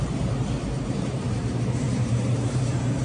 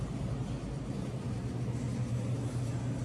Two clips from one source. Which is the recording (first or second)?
second